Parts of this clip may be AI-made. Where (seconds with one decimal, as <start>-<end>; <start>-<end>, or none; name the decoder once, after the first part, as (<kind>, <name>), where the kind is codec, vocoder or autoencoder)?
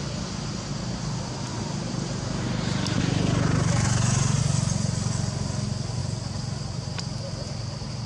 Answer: 1.5-4.4 (vocoder, BigVGAN v2); 6.0-7.0